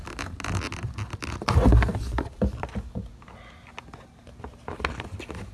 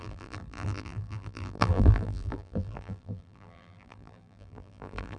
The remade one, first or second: second